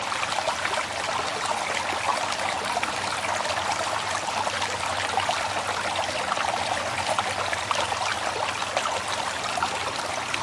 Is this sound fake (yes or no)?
no